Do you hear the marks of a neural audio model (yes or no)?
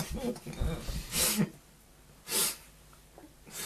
no